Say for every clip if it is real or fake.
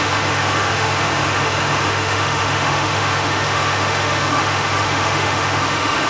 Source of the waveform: fake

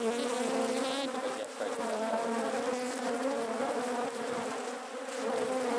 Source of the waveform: real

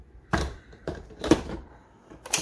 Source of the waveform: fake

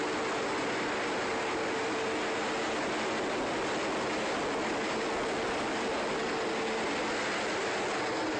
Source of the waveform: real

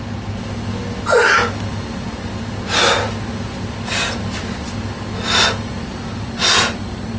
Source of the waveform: real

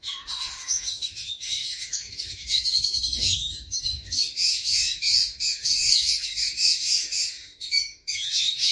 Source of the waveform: fake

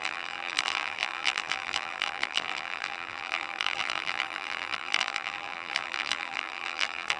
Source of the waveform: fake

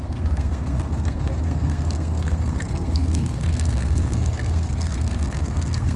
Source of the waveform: fake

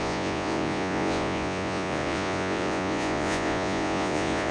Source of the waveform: fake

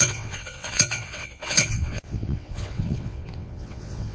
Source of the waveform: fake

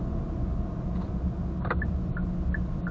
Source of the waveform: real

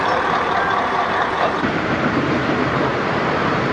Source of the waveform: fake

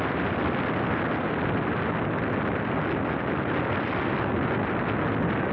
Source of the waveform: real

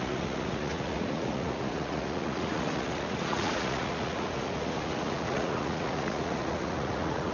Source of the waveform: fake